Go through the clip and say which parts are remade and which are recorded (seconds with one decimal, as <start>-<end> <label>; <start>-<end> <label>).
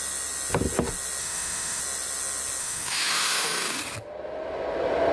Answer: 0.0-1.2 recorded; 1.2-1.8 remade; 1.8-2.6 recorded; 2.6-3.8 remade; 3.8-5.1 recorded